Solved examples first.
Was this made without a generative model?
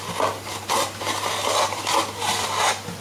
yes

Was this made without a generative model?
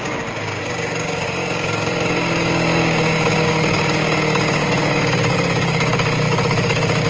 no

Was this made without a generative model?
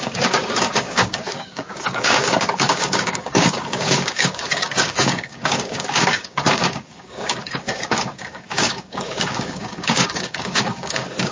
no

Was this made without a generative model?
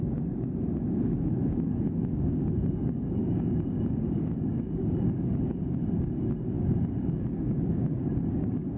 no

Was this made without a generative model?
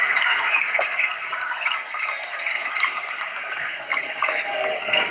no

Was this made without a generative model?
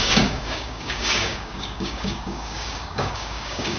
no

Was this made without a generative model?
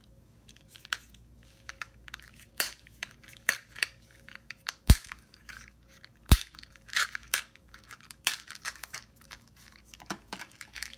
no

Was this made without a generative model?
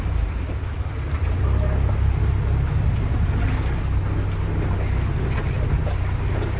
yes